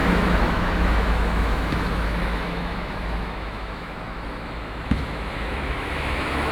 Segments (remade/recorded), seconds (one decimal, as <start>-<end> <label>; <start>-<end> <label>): 0.0-6.5 remade